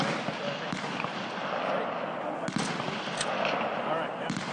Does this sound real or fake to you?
real